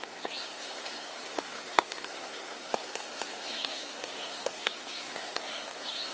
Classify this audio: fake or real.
fake